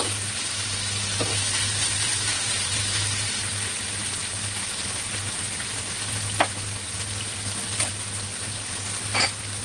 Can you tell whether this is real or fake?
real